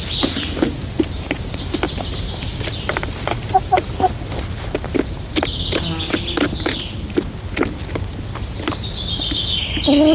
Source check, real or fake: real